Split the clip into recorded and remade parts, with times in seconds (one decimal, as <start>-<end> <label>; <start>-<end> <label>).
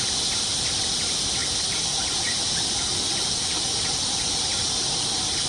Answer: 0.0-5.5 recorded